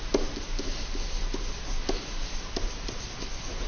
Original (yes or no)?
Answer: yes